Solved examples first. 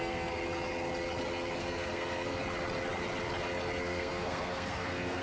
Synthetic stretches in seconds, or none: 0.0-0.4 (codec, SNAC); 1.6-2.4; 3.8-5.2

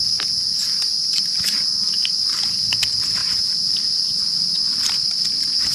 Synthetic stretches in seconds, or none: 0.6-1.2 (vocoder, BigVGAN v2); 3.2-4.0

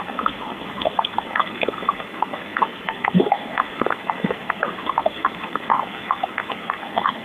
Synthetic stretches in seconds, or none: 0.0-7.2 (codec, SNAC)

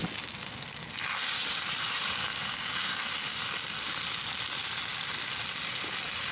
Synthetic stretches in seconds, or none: 2.5-3.0 (codec, DAC)

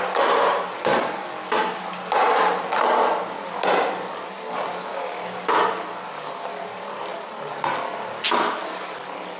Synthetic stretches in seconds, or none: 4.9-5.6 (codec, DAC)

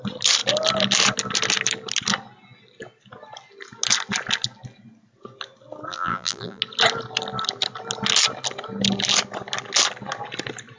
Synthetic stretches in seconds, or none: 5.9-6.6 (vocoder, BigVGAN v2)

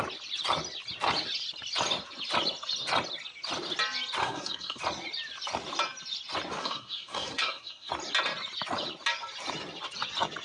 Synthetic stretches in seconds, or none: 4.2-4.8 (codec, SNAC); 6.6-7.9

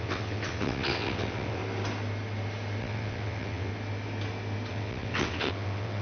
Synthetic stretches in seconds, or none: 0.0-1.6 (vocoder, WaveNeXt); 2.8-3.7; 4.7-6.0